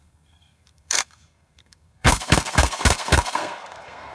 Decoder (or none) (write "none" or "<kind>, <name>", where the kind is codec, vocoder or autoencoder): codec, SNAC